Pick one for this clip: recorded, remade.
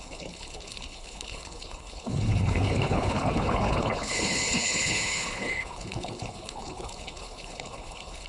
remade